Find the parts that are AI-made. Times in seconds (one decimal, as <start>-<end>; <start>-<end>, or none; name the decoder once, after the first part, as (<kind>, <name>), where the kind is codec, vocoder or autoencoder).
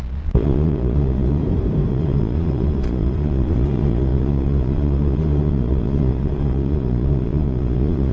0.0-1.4 (vocoder, Vocos); 1.9-8.1